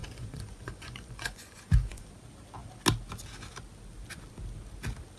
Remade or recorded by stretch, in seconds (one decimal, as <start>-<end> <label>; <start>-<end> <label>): 0.0-2.1 remade; 2.1-5.2 recorded